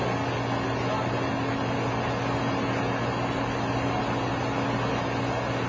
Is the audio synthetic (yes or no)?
no